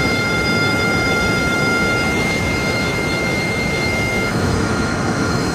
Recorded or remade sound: remade